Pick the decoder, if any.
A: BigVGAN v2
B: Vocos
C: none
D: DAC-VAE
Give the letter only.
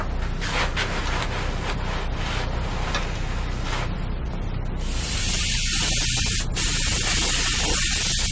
C